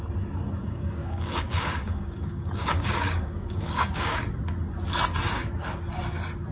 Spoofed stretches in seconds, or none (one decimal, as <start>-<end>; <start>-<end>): 0.6-4.2